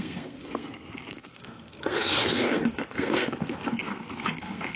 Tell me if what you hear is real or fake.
fake